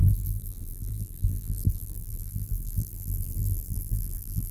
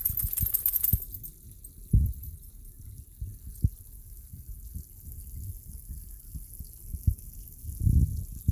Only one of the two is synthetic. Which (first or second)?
first